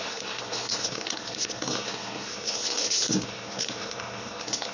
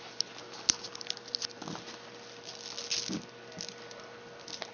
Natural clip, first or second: second